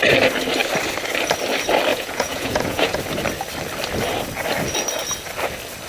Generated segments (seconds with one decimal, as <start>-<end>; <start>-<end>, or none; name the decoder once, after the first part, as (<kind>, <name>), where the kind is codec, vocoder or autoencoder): 1.9-3.0 (vocoder, Vocos)